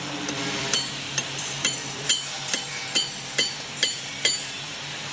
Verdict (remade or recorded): remade